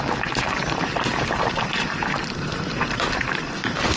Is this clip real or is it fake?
fake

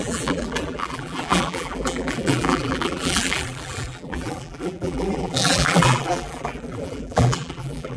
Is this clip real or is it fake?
fake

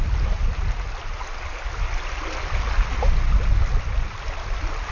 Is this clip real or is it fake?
real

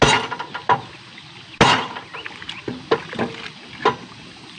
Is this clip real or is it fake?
real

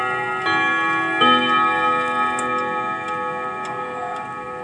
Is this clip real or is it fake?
real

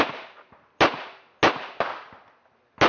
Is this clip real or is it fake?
real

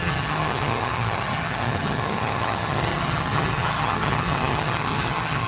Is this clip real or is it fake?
fake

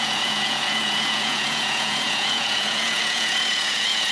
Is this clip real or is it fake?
fake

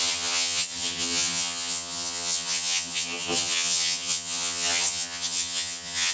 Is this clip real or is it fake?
fake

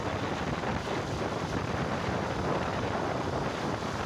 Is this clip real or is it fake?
real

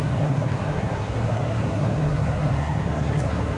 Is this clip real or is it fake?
fake